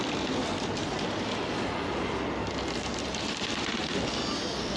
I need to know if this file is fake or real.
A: fake